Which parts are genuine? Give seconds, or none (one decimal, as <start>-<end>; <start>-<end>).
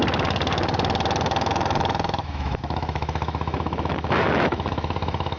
0.0-1.5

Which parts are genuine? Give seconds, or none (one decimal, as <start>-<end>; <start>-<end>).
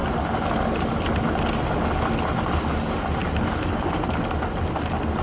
0.0-3.2; 4.1-5.2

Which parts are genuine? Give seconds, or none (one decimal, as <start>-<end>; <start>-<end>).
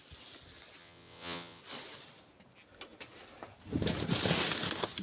0.0-0.8; 1.6-5.0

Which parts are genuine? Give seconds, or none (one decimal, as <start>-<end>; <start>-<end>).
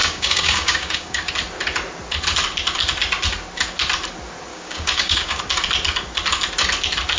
1.3-4.5; 5.4-7.2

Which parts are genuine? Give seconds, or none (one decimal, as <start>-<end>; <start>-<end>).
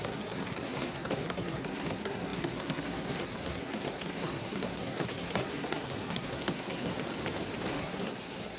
6.9-7.7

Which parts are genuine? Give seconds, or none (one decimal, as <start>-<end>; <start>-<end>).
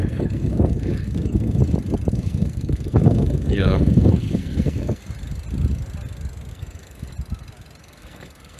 1.6-2.1; 5.0-6.5; 7.1-7.8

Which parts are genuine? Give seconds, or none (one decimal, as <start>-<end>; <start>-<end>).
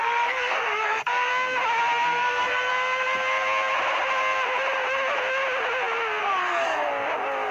1.3-2.1; 2.7-6.2; 6.9-7.5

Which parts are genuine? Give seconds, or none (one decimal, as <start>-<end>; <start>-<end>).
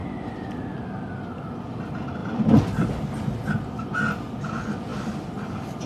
1.8-2.2; 2.9-4.9